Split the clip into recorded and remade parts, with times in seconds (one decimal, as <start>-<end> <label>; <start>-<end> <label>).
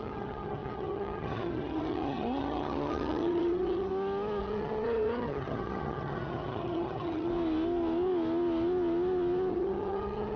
0.0-3.9 remade; 3.9-4.4 recorded; 4.4-7.3 remade; 7.3-9.5 recorded; 9.5-10.4 remade